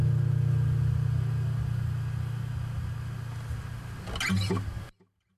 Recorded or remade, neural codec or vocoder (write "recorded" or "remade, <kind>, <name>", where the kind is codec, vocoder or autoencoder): recorded